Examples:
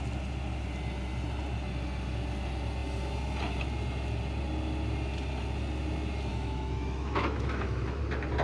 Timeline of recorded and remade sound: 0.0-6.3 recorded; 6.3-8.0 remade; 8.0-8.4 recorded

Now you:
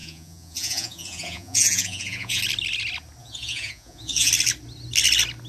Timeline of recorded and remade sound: 0.0-2.4 remade; 2.4-3.2 recorded; 3.2-4.3 remade; 4.3-5.5 recorded

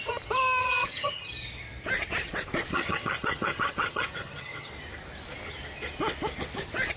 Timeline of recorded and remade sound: 0.0-0.6 recorded; 0.6-1.3 remade; 1.3-2.7 recorded; 2.7-4.7 remade; 4.7-7.0 recorded

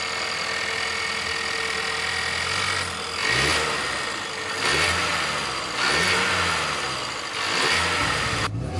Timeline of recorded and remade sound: 0.0-8.0 recorded; 8.0-8.8 remade

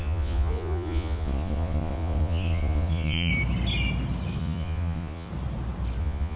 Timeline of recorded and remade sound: 0.0-3.3 remade; 3.3-4.4 recorded; 4.4-5.3 remade; 5.3-6.0 recorded; 6.0-6.4 remade

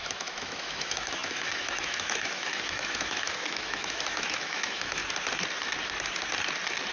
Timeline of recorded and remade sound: 0.0-5.0 remade; 5.0-6.9 recorded

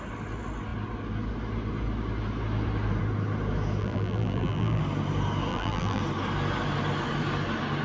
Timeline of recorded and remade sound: 0.0-3.8 recorded; 3.8-4.8 remade; 4.8-5.5 recorded; 5.5-6.0 remade; 6.0-7.8 recorded

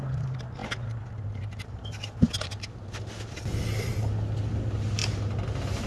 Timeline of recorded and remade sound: 0.0-5.9 recorded